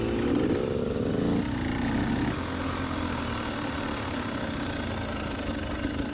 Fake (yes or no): no